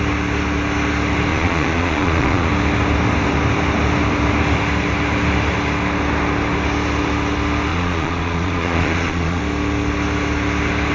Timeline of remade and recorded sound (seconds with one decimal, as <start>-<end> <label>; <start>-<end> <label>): 0.0-1.3 recorded; 1.3-2.5 remade; 2.5-7.7 recorded; 7.7-9.4 remade; 9.4-10.9 recorded